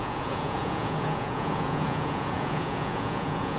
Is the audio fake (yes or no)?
yes